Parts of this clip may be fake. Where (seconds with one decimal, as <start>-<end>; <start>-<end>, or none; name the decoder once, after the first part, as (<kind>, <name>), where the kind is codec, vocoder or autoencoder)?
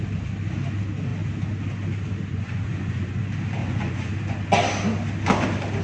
2.3-3.2 (vocoder, Vocos); 3.6-4.1